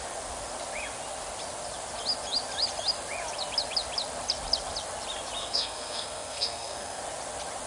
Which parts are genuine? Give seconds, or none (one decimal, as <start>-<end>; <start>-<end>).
0.0-5.4; 7.0-7.7